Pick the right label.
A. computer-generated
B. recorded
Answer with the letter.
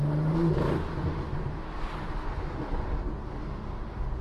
B